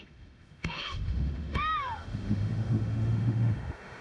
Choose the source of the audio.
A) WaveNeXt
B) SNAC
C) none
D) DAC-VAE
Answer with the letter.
D